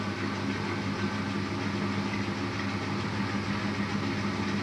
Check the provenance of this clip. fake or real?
real